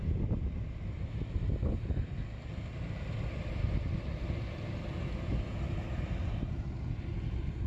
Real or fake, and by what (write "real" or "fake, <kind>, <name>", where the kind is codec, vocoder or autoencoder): real